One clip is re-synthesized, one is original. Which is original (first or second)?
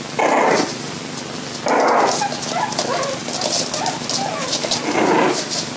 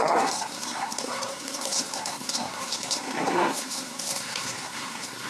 first